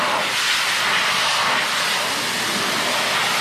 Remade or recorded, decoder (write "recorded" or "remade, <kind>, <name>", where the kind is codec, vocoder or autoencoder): recorded